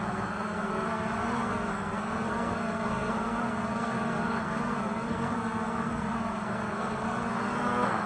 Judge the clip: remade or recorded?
remade